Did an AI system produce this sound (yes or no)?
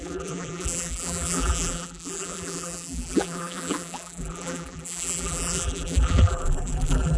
yes